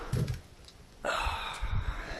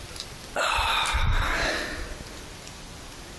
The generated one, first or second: first